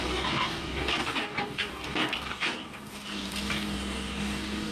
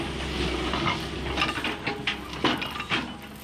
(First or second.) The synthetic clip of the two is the first